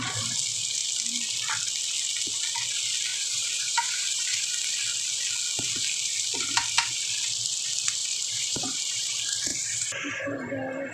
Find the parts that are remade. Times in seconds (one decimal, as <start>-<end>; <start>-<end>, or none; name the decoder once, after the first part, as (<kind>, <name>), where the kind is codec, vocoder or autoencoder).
3.1-4.4 (vocoder, BigVGAN v2); 8.0-9.1; 9.5-10.1